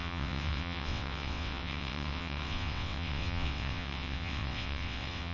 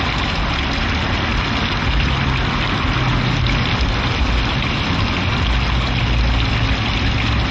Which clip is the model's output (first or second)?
first